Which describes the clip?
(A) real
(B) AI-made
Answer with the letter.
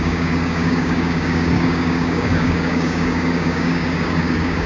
B